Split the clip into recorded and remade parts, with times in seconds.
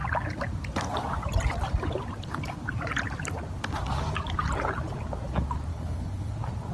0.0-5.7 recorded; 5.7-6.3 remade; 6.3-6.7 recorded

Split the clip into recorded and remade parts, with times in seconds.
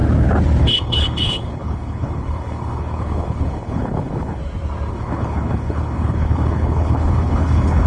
0.0-0.6 recorded; 0.6-4.4 remade; 4.4-4.9 recorded; 4.9-7.9 remade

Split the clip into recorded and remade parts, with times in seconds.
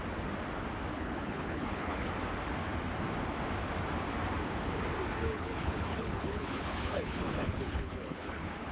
0.0-0.9 recorded; 0.9-2.1 remade; 2.1-5.2 recorded; 5.2-8.7 remade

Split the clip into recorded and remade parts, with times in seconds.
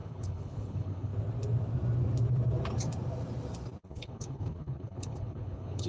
0.0-1.1 remade; 1.1-3.8 recorded; 3.8-5.9 remade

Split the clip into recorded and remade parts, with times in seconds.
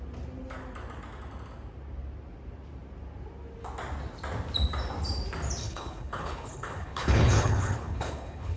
0.0-5.6 recorded; 5.6-8.6 remade